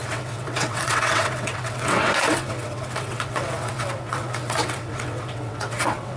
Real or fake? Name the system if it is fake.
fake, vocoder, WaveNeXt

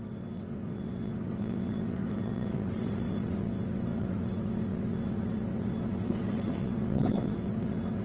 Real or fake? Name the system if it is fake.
fake, vocoder, WaveNeXt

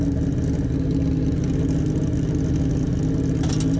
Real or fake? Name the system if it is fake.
real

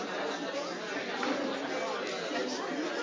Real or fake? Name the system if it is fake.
real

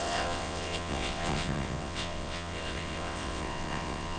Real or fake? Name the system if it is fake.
fake, vocoder, WaveNeXt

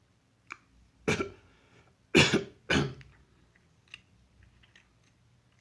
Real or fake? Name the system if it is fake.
real